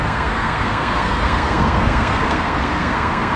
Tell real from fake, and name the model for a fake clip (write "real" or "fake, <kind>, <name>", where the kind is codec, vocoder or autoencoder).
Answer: fake, codec, SNAC